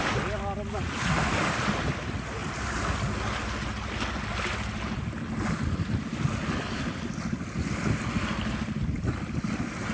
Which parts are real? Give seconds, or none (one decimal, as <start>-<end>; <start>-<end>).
0.0-9.9